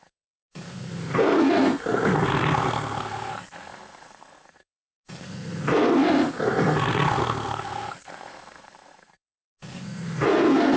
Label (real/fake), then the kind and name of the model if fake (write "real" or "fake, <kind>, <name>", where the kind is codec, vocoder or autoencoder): fake, codec, SNAC